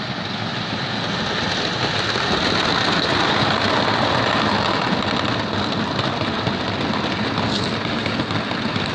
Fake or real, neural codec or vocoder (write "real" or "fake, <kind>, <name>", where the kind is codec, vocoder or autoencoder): real